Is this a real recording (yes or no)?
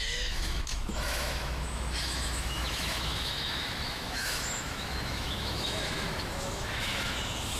no